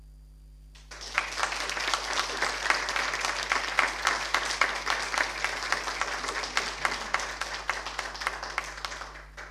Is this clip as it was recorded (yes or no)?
yes